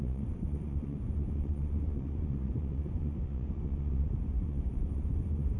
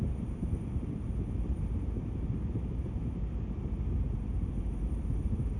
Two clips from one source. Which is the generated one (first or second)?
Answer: first